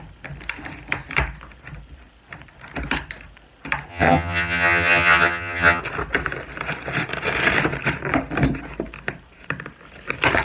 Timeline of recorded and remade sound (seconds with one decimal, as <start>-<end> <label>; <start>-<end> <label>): 0.0-3.9 recorded; 3.9-5.8 remade; 5.8-10.4 recorded